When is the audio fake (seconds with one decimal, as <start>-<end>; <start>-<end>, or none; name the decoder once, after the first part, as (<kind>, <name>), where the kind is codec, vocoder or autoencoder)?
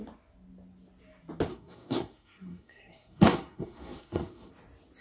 1.5-4.5 (codec, SNAC)